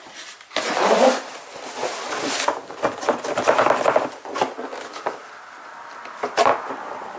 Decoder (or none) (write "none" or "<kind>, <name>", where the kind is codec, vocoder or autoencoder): none